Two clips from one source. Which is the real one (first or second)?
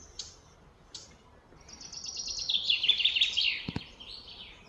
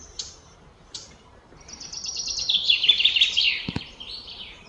first